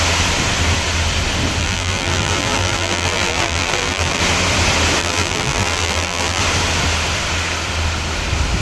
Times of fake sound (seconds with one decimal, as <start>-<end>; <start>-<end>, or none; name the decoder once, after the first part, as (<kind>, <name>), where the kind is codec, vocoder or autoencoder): 1.6-4.2 (vocoder, BigVGAN v2); 5.0-6.4